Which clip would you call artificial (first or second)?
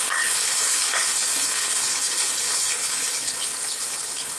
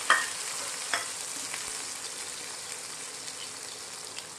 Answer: first